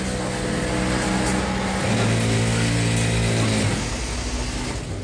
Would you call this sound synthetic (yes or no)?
no